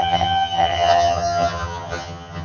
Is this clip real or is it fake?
fake